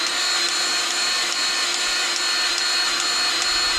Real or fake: real